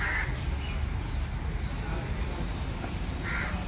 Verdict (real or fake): real